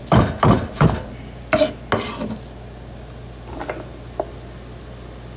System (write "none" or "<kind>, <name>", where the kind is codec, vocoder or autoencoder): none